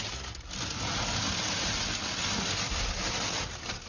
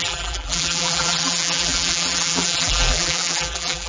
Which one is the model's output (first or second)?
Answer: second